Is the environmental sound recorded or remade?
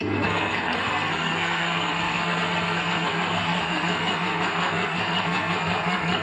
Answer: remade